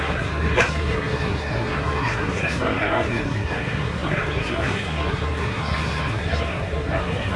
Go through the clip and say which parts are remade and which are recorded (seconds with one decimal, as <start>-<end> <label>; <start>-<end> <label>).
0.0-7.4 remade

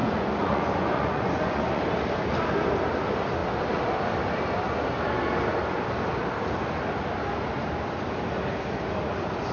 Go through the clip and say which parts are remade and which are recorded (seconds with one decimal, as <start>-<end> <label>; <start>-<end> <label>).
0.0-1.8 remade; 1.8-9.5 recorded